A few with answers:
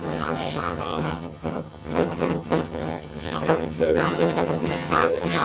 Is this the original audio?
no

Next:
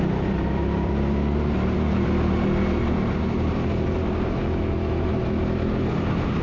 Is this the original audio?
yes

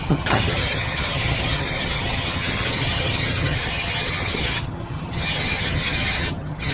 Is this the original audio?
no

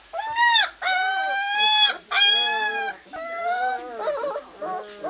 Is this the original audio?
yes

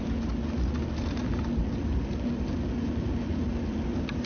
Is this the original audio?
yes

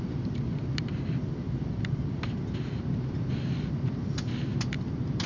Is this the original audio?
yes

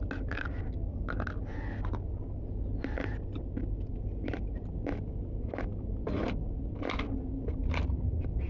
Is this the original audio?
yes